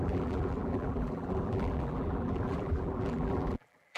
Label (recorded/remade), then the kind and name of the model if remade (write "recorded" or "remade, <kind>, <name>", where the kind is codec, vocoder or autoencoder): remade, vocoder, BigVGAN v2